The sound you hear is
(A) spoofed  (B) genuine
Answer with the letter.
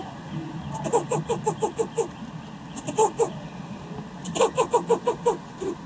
B